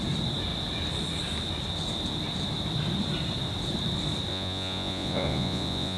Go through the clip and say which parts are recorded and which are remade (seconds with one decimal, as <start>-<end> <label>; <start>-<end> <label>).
0.0-4.3 recorded; 4.3-6.0 remade